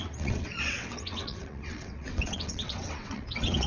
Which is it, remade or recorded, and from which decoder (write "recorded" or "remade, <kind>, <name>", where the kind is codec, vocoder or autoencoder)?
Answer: remade, vocoder, WaveNeXt